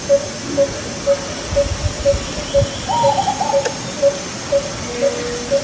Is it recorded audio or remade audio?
recorded